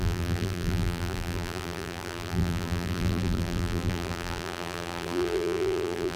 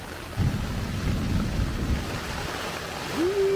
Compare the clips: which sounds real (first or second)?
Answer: second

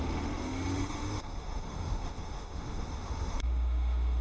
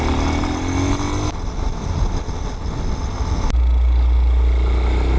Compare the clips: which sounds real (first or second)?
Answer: second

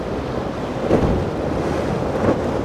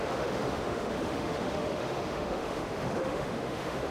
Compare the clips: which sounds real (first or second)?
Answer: first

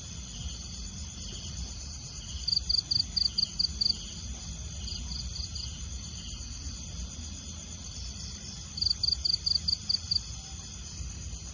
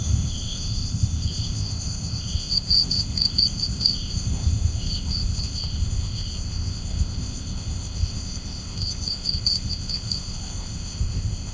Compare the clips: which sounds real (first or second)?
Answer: first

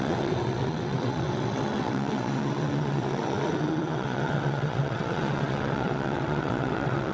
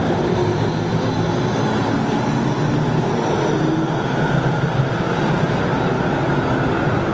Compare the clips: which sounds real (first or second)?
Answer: second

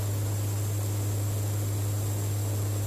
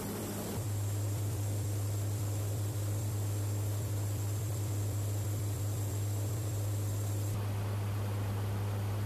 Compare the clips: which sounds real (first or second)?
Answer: first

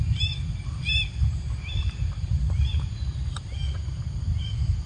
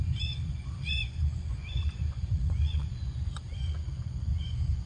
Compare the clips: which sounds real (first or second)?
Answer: first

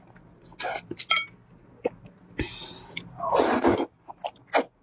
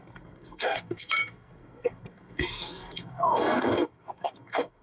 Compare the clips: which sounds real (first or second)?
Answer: first